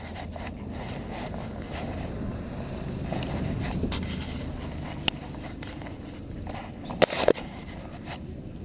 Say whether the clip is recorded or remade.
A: recorded